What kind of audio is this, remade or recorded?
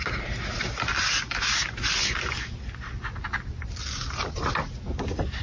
recorded